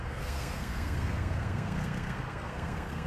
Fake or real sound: fake